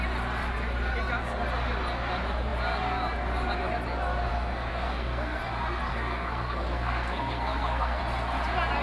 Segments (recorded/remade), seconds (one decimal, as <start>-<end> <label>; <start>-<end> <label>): 0.0-4.7 recorded; 4.7-5.4 remade; 5.4-5.9 recorded; 5.9-8.0 remade; 8.0-8.8 recorded